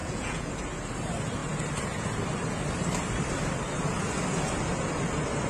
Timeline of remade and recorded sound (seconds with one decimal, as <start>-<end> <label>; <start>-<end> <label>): 0.0-0.5 remade; 0.5-5.5 recorded